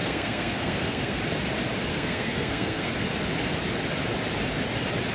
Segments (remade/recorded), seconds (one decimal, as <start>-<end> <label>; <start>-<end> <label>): 0.0-1.2 remade; 1.2-1.9 recorded; 1.9-2.9 remade; 2.9-5.1 recorded